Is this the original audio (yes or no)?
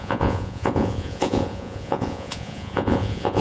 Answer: no